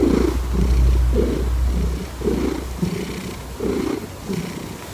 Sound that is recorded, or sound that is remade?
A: recorded